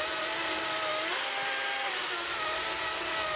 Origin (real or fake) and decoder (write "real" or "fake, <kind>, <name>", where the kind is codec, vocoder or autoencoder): real